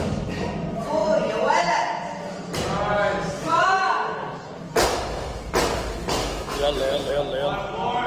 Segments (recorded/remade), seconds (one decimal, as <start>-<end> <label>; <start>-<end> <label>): 0.0-4.9 recorded; 4.9-5.4 remade; 5.4-6.2 recorded; 6.2-7.1 remade; 7.1-8.1 recorded